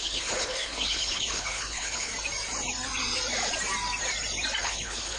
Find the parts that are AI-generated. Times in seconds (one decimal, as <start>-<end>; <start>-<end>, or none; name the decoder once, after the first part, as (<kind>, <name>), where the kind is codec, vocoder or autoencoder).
0.0-2.1 (codec, HILCodec); 4.6-5.2